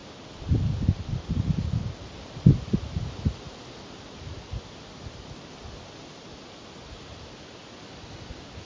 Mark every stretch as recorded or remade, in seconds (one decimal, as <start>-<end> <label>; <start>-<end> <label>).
0.0-8.6 recorded